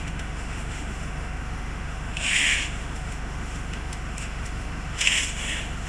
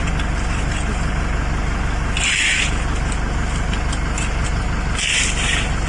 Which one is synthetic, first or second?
first